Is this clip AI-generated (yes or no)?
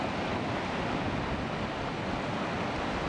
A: no